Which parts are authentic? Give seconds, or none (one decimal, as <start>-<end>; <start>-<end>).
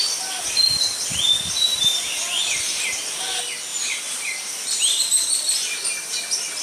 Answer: 0.0-3.7; 5.0-6.6